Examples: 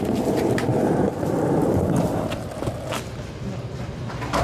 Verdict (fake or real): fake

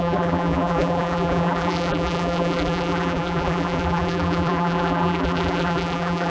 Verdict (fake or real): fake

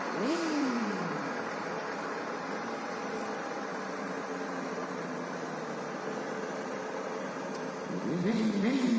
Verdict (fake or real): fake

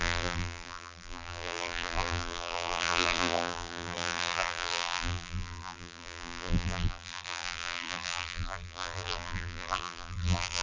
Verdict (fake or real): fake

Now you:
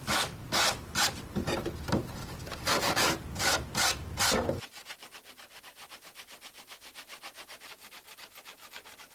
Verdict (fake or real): fake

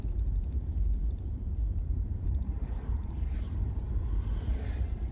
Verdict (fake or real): fake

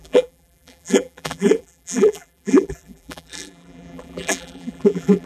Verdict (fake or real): fake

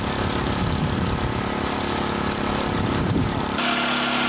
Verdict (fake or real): real